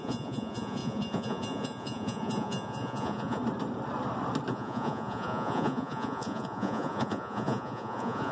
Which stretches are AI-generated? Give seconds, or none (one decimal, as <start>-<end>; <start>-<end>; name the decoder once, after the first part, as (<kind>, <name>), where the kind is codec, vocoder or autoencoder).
0.0-3.4 (vocoder, Vocos); 4.5-8.3